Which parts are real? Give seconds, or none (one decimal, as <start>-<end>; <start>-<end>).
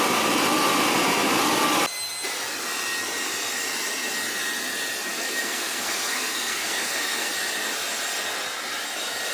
0.0-5.1; 7.3-9.3